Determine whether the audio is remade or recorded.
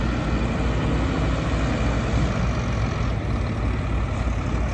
recorded